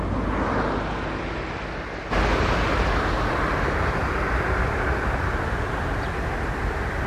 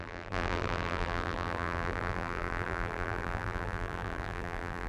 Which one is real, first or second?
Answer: first